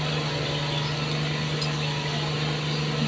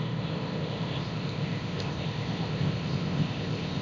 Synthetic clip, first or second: second